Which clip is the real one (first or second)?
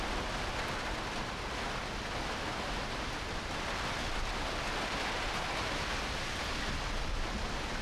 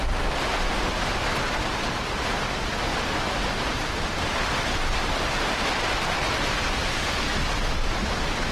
first